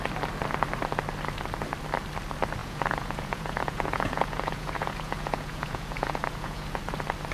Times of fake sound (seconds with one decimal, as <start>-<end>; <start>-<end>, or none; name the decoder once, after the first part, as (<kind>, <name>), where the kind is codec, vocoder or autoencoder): 2.6-6.8 (vocoder, Vocos)

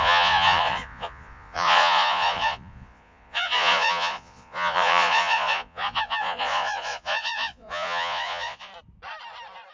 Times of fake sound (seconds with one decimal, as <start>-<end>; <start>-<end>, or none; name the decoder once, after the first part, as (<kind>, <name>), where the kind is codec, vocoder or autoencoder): 0.0-8.7 (vocoder, Vocos)

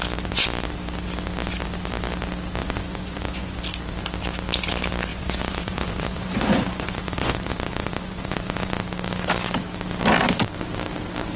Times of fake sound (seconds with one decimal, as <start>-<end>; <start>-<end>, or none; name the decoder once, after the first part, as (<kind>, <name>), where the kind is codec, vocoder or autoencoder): 2.6-3.6 (vocoder, Vocos); 5.1-8.8

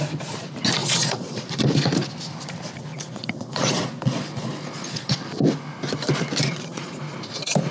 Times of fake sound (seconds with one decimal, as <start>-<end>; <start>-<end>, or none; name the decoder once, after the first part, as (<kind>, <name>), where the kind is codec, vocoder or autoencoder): 0.8-1.5 (vocoder, Vocos); 2.9-5.2; 6.5-7.0

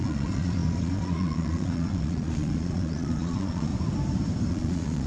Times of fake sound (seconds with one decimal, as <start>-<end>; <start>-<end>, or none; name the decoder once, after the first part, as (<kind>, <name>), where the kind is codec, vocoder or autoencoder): 0.0-3.7 (vocoder, Vocos); 4.5-5.1

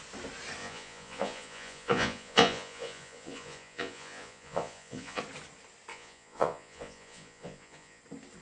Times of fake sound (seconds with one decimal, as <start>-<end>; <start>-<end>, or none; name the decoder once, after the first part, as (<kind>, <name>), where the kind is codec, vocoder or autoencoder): 0.6-5.2 (vocoder, Vocos); 5.9-8.0